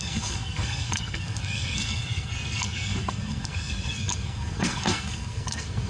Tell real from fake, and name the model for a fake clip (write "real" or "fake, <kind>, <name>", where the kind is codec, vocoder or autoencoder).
fake, codec, SNAC